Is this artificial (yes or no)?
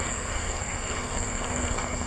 yes